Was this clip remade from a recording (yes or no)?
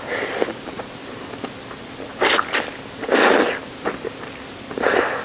no